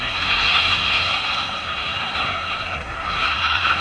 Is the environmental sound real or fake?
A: fake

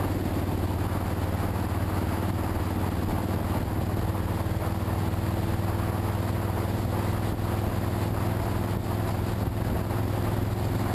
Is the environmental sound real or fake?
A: real